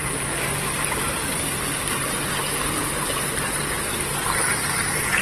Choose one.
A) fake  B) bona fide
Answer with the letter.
B